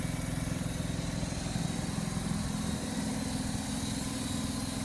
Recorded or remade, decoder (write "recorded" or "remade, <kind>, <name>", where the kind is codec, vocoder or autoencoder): recorded